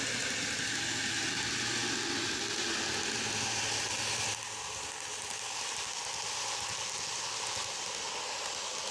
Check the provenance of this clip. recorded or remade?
recorded